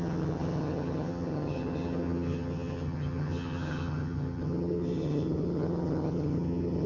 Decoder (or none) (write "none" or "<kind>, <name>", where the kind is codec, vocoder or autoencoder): vocoder, HiFi-GAN